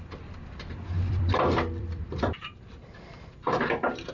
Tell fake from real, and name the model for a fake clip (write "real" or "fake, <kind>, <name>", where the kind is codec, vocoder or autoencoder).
fake, vocoder, BigVGAN v2